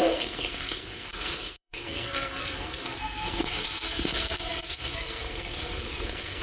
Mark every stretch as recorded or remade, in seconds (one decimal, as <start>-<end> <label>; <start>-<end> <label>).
0.0-6.4 remade